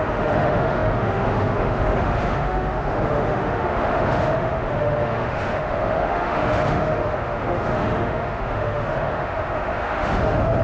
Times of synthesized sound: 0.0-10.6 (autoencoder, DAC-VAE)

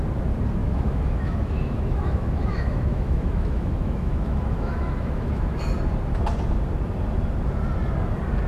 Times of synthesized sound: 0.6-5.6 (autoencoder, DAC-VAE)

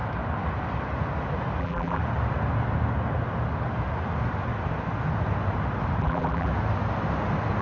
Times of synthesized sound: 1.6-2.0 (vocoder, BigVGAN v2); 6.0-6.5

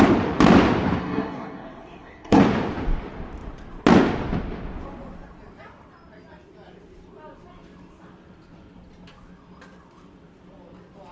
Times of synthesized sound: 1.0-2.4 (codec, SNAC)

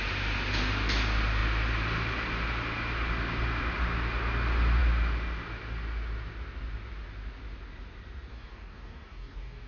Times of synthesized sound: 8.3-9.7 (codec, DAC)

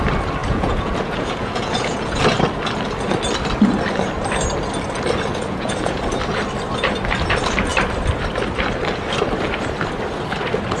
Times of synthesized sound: 0.4-2.2 (vocoder, Vocos); 5.3-6.0